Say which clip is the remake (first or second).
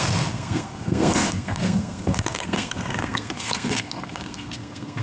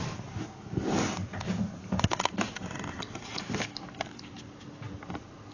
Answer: first